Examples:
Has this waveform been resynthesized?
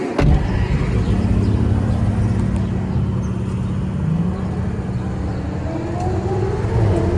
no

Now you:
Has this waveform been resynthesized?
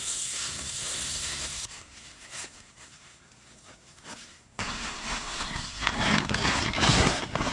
yes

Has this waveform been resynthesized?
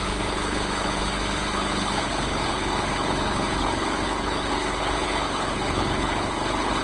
yes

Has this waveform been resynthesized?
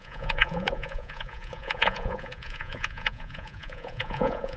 yes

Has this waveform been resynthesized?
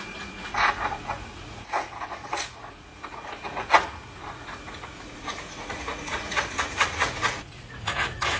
yes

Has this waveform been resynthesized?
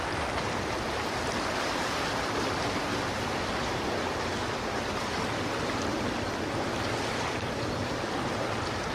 yes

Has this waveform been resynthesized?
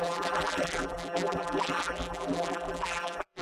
yes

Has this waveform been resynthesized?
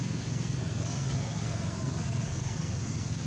yes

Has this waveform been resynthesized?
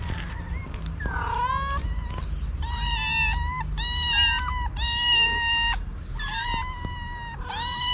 no